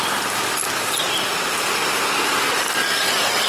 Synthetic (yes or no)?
no